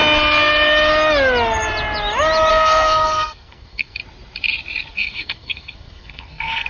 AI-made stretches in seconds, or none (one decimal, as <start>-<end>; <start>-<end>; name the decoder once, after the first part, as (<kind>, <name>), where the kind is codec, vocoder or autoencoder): 2.5-4.0 (codec, SNAC); 4.9-6.7